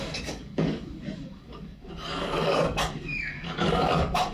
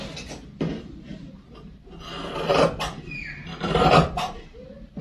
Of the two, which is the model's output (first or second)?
first